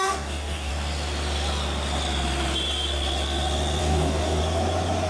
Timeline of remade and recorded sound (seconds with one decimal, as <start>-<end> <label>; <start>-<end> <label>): 0.0-0.7 remade; 0.7-3.8 recorded; 3.8-4.4 remade; 4.4-5.1 recorded

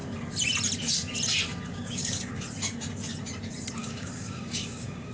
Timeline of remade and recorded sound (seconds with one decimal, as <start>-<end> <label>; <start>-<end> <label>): 0.0-1.7 recorded; 1.7-2.4 remade; 2.4-3.8 recorded; 3.8-5.1 remade